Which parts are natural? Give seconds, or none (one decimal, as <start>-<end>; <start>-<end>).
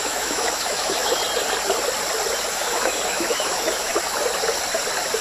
1.2-2.4; 3.9-5.2